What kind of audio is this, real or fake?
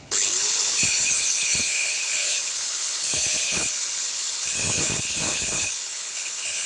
fake